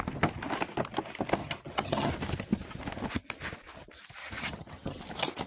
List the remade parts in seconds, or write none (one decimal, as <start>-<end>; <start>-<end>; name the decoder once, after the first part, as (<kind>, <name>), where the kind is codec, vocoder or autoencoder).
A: 1.4-2.1 (vocoder, HiFi-GAN); 4.2-5.0